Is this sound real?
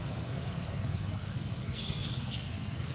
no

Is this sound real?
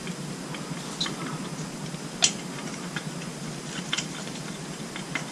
yes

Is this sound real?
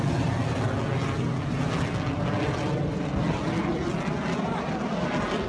yes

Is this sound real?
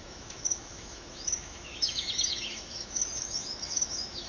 no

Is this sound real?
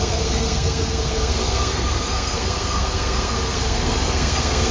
no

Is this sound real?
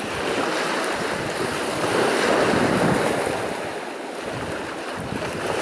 yes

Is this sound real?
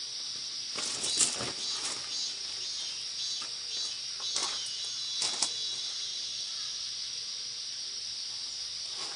yes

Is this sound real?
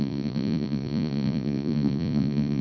no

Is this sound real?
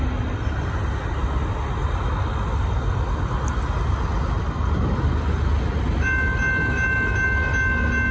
yes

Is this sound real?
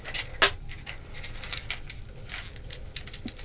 yes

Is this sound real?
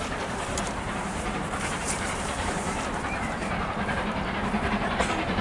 no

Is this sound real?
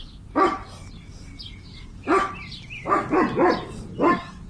yes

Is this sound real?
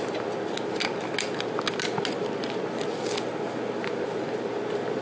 yes